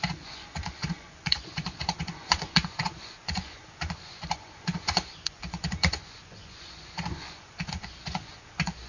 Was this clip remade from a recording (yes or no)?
yes